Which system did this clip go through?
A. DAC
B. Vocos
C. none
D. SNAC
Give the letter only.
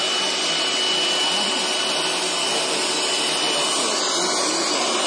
C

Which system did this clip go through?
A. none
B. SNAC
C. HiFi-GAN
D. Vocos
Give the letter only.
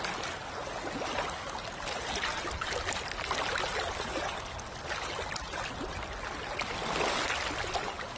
A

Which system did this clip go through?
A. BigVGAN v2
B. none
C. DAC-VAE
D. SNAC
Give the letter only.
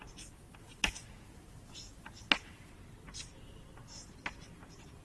B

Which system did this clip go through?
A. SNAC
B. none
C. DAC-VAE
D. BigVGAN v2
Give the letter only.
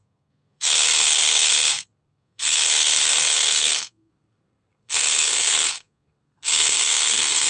A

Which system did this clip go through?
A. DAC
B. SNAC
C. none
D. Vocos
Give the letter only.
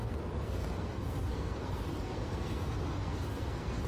B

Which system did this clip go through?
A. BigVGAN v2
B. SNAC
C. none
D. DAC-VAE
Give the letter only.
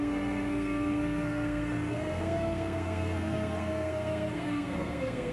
B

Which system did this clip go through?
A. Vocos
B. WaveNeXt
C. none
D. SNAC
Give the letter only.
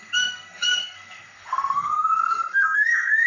D